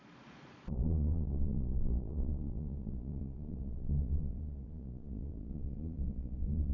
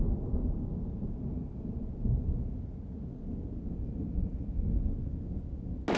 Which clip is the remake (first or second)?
first